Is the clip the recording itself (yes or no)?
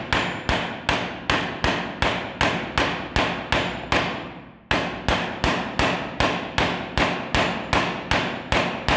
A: yes